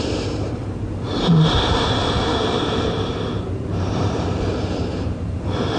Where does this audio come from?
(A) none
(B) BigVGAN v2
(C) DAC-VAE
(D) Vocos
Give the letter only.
B